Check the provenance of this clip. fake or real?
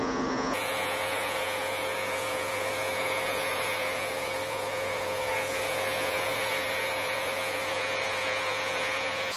fake